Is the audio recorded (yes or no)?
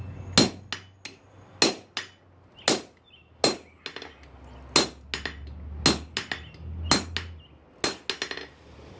yes